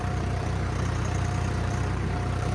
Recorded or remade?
remade